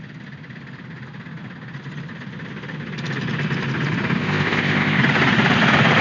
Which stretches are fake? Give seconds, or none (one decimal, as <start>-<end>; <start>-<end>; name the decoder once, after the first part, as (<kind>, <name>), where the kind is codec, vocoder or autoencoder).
4.2-5.0 (codec, ZipCodec)